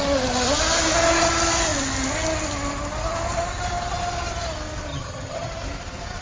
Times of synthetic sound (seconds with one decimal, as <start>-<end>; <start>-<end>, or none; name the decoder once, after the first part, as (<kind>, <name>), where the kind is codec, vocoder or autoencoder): 4.9-5.5 (vocoder, HiFi-GAN)